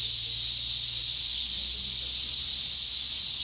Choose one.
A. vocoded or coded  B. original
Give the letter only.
B